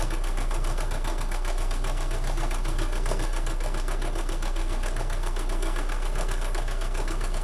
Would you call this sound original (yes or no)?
no